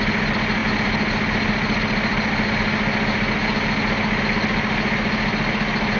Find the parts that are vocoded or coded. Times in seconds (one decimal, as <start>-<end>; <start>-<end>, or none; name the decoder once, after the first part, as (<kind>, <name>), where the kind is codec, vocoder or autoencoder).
none

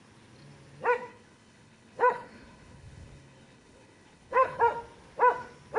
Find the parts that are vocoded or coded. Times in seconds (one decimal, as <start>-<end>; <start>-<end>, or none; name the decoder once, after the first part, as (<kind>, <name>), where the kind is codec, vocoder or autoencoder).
1.1-4.6 (codec, HILCodec)

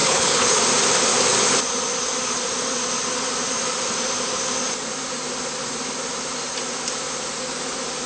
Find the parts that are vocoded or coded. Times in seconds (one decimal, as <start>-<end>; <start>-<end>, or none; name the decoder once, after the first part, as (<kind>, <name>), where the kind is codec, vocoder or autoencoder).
0.0-0.6 (codec, HILCodec)

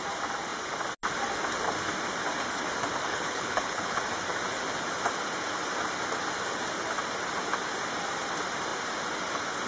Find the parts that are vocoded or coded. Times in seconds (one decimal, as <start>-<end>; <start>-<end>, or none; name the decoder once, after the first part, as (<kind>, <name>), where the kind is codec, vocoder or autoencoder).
3.1-4.0 (codec, HILCodec)